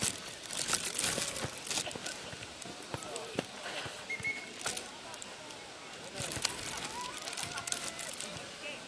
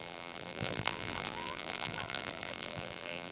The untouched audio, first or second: first